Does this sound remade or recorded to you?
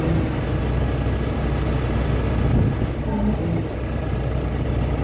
recorded